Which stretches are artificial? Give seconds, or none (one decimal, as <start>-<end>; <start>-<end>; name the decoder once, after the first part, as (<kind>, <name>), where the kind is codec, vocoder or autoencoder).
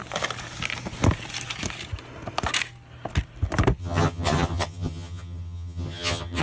3.8-6.4 (vocoder, HiFi-GAN)